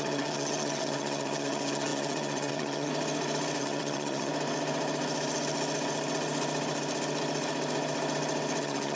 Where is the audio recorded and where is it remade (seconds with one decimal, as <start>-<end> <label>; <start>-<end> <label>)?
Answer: 0.0-2.9 remade; 2.9-3.6 recorded; 3.6-4.3 remade; 4.3-8.6 recorded; 8.6-9.0 remade